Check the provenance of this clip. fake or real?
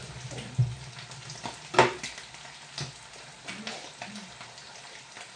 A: real